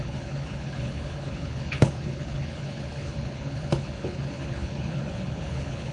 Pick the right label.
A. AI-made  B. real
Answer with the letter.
A